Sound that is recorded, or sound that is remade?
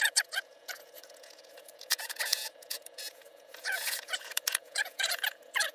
remade